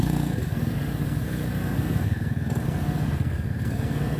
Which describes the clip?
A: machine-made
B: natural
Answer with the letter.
A